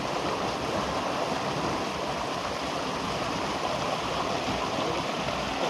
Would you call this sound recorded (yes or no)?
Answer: yes